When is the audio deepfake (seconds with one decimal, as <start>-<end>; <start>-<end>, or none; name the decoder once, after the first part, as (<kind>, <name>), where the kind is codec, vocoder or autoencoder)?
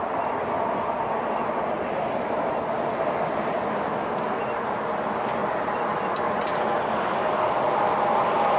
5.4-6.9 (vocoder, BigVGAN v2)